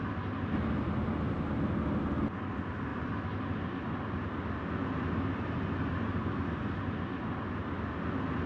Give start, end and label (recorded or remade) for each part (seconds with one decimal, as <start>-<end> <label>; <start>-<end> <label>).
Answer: 0.0-8.5 recorded